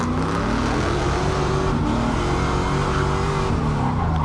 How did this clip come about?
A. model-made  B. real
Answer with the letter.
B